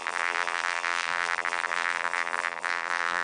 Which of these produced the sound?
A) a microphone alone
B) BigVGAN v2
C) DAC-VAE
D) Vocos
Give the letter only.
B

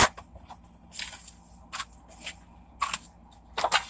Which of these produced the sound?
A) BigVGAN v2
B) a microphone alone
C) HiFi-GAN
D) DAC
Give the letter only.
B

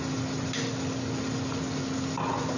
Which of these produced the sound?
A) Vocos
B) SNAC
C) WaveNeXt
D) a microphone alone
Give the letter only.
D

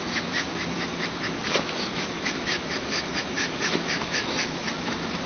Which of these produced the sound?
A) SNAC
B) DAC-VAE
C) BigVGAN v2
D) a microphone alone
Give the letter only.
B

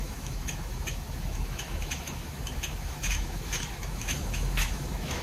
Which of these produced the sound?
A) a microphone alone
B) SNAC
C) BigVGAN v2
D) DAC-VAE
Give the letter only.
D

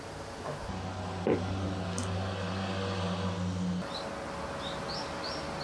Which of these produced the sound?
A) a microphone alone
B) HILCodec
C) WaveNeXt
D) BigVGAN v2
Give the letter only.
A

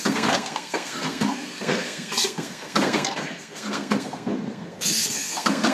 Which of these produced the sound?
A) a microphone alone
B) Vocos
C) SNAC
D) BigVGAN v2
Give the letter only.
C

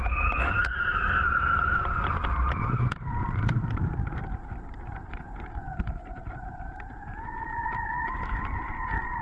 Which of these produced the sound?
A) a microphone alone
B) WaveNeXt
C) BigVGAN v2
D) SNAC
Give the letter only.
C